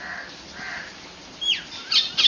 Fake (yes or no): no